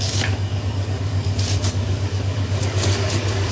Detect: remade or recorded remade